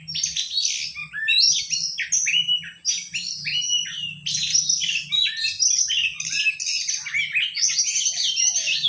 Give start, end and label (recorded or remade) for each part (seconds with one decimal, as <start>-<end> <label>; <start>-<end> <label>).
0.0-8.9 recorded

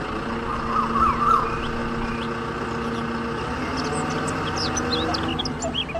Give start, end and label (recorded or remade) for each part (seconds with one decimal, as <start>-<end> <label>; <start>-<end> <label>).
0.0-6.0 recorded

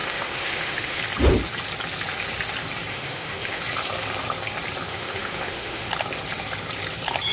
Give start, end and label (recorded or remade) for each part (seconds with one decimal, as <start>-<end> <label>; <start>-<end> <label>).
0.0-1.0 remade; 1.0-2.9 recorded; 2.9-3.6 remade; 3.6-4.9 recorded; 4.9-5.9 remade; 5.9-7.3 recorded

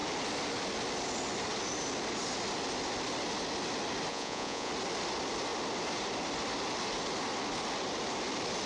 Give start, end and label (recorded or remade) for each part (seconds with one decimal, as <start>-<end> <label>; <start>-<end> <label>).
0.0-4.1 recorded; 4.1-4.7 remade; 4.7-8.7 recorded

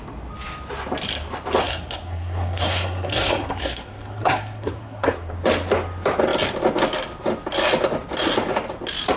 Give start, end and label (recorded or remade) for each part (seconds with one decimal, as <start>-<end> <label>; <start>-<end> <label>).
0.0-1.6 recorded; 1.6-5.3 remade; 5.3-9.2 recorded